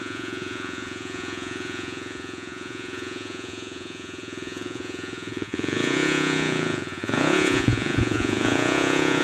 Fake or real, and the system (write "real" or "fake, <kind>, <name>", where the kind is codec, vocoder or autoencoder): fake, vocoder, Vocos